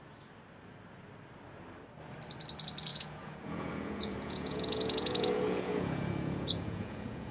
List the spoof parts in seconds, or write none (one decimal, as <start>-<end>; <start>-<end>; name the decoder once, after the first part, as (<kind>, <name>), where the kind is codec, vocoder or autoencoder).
2.9-7.3 (vocoder, Vocos)